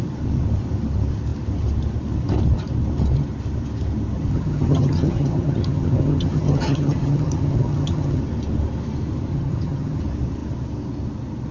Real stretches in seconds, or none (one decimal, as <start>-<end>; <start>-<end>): 0.0-4.3; 8.2-9.3; 10.0-11.5